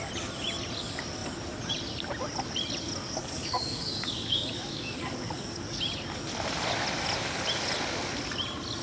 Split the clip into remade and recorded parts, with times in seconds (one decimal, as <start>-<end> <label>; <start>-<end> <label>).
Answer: 0.0-3.0 recorded; 3.0-5.8 remade; 5.8-8.8 recorded